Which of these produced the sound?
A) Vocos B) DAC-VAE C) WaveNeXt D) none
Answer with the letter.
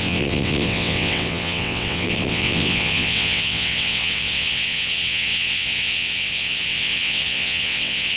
C